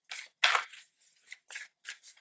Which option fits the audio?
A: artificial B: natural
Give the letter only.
B